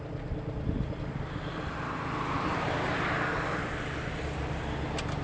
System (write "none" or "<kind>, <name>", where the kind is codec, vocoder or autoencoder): none